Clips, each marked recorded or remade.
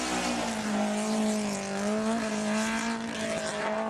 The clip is recorded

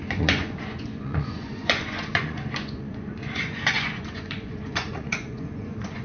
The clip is remade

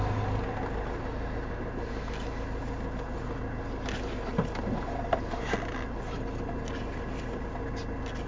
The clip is recorded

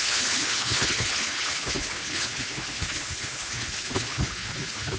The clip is remade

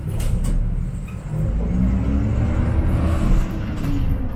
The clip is recorded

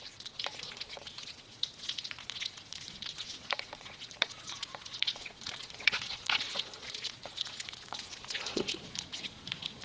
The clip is remade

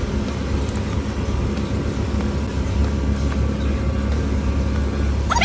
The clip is recorded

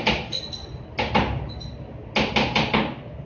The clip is recorded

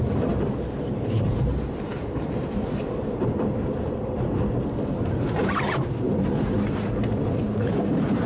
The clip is remade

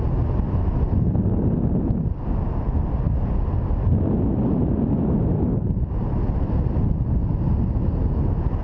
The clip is recorded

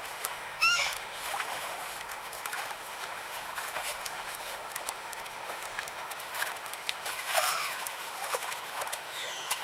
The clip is remade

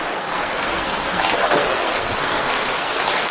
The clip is remade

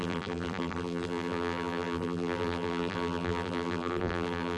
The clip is remade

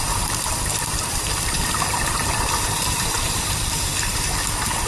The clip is remade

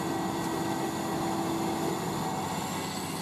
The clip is recorded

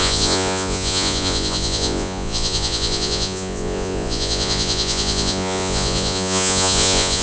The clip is remade